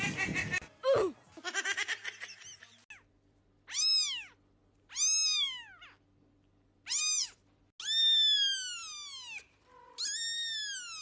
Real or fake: real